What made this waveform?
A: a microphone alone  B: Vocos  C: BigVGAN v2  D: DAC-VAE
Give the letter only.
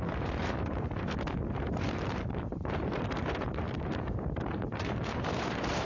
C